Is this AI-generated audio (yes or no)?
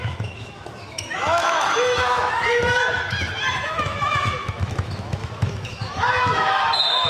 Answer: yes